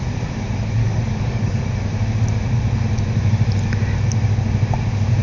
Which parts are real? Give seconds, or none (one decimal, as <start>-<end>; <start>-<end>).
0.0-0.8; 1.6-5.2